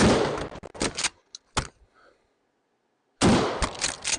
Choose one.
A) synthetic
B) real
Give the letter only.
B